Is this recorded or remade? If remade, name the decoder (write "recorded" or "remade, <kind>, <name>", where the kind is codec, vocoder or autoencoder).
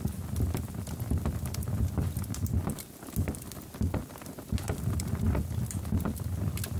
recorded